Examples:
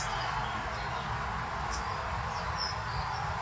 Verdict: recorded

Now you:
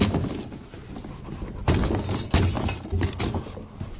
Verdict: recorded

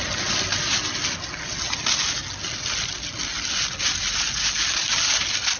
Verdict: recorded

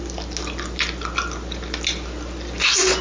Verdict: recorded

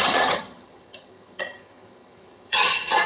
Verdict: remade